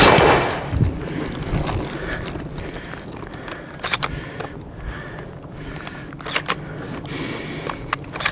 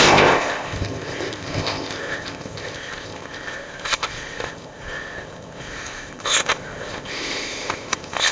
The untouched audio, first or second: first